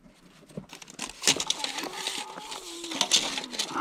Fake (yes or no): no